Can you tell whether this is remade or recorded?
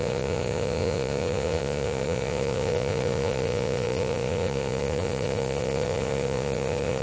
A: remade